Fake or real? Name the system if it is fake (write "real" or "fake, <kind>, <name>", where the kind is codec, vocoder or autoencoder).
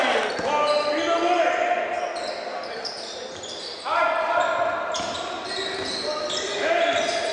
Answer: real